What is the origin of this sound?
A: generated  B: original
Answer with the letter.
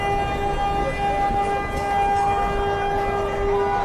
B